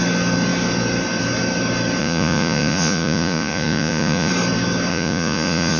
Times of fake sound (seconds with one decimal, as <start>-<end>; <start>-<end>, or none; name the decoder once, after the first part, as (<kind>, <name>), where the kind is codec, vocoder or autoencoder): 2.0-4.3 (vocoder, Vocos); 4.9-5.8

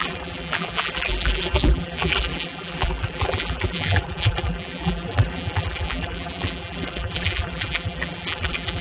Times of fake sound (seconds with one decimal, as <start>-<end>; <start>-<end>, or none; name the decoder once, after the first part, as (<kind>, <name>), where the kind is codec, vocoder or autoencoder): 0.0-8.8 (vocoder, BigVGAN v2)

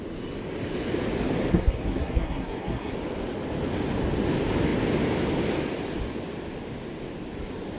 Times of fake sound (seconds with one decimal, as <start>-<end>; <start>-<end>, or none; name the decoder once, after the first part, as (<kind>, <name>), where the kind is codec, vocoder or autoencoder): 1.5-2.9 (codec, SNAC)

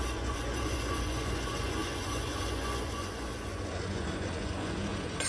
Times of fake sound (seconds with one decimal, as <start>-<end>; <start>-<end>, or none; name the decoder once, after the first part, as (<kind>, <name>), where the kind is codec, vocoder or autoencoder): 0.0-5.3 (vocoder, Vocos)